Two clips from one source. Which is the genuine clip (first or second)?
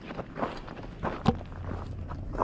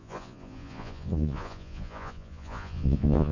first